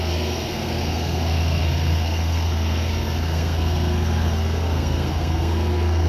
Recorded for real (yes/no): no